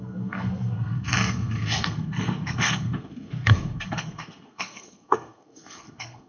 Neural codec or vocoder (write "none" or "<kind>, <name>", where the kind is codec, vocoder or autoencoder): codec, SNAC